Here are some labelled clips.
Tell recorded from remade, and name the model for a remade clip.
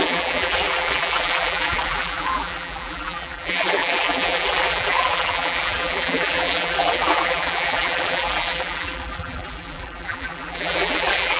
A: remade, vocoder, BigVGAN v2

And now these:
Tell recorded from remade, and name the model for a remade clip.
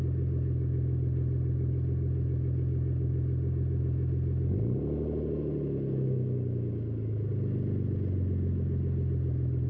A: recorded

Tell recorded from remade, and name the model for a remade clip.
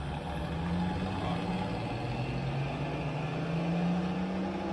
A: recorded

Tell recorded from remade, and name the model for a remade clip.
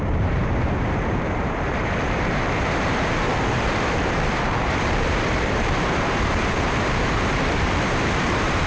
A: remade, vocoder, BigVGAN v2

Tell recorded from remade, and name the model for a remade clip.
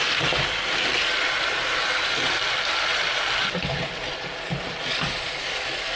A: recorded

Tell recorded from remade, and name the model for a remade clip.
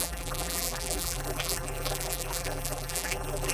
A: remade, vocoder, BigVGAN v2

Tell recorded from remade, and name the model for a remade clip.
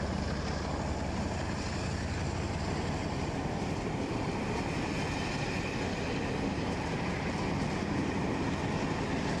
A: recorded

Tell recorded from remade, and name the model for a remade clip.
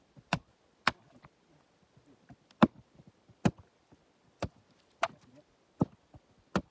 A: recorded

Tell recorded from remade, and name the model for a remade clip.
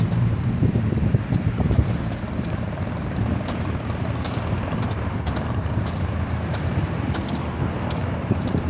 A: remade, vocoder, BigVGAN v2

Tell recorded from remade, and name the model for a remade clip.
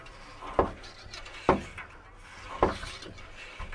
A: recorded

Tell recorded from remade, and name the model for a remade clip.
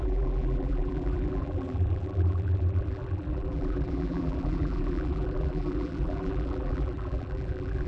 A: remade, vocoder, BigVGAN v2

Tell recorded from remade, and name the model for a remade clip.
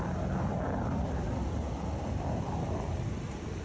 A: remade, vocoder, BigVGAN v2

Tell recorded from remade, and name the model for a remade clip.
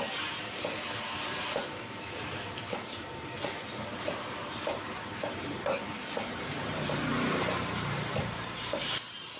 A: remade, vocoder, BigVGAN v2